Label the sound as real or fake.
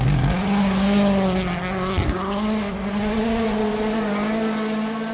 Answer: real